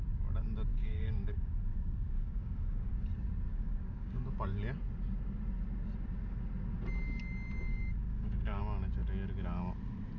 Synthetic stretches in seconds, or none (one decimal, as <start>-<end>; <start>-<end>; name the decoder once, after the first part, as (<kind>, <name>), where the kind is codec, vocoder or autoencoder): 0.7-2.9 (codec, DAC); 3.5-4.2; 7.7-8.6